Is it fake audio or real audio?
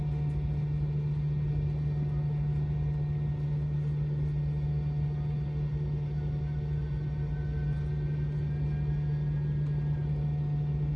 real